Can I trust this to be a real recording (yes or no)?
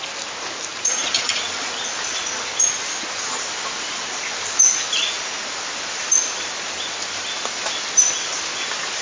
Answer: yes